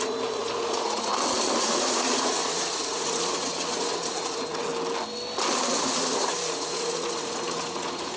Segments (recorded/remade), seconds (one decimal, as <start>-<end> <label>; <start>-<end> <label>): 0.0-1.1 remade; 1.1-1.6 recorded; 1.6-4.7 remade; 4.7-5.8 recorded; 5.8-8.2 remade